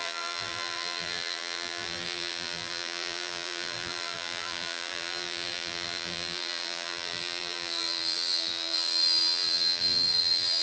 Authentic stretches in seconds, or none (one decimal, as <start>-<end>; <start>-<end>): none